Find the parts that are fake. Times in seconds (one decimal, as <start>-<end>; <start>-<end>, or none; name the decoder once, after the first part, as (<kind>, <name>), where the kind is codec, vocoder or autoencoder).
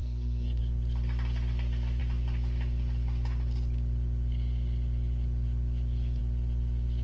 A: 0.0-0.6 (codec, SNAC)